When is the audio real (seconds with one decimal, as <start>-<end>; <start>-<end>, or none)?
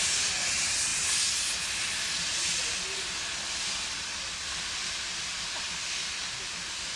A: 0.0-7.0